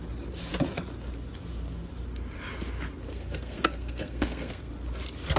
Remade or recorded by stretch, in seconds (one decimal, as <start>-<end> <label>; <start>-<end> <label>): 0.0-3.1 recorded; 3.1-4.7 remade; 4.7-5.4 recorded

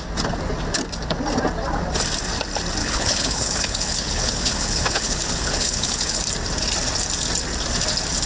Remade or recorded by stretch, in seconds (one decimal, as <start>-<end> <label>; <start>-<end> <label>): 0.0-2.8 recorded; 2.8-6.2 remade; 6.2-8.3 recorded

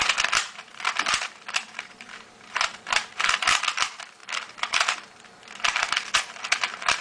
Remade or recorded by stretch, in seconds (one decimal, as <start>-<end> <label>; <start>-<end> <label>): 0.0-7.0 remade